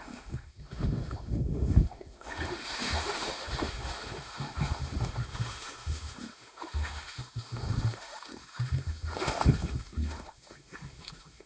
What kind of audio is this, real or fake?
fake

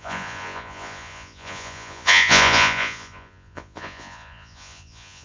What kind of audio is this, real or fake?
fake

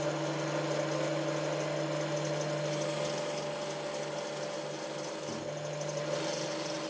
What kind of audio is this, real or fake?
real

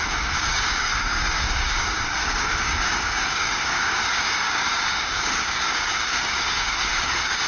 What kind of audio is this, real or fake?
fake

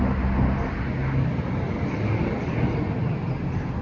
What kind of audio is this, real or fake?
real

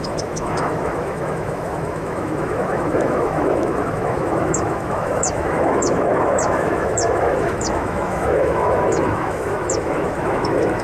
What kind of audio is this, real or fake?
fake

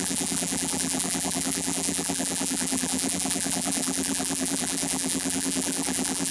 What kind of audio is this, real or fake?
fake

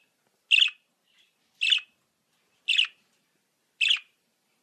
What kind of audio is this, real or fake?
real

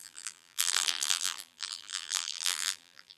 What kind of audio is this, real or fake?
fake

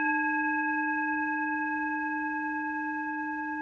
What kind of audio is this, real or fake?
real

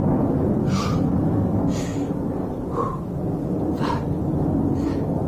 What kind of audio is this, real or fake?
real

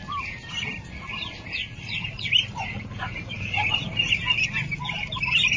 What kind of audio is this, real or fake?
real